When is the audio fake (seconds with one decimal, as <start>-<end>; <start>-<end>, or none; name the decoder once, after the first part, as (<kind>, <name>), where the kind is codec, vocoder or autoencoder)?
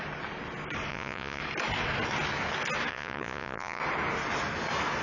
0.9-1.4 (vocoder, Vocos); 2.9-3.8